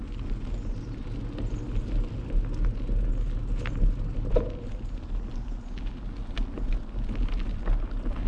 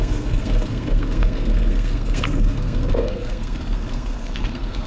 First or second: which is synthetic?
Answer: second